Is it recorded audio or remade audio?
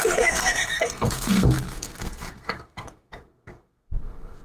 remade